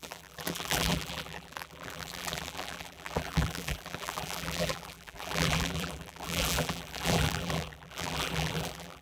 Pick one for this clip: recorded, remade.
remade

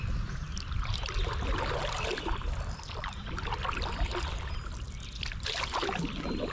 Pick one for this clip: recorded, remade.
recorded